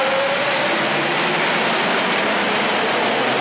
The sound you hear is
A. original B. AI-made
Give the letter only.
A